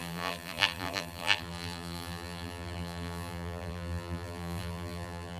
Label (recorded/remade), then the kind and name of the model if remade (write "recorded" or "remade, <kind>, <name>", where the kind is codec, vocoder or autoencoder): remade, vocoder, BigVGAN v2